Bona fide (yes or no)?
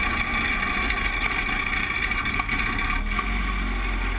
yes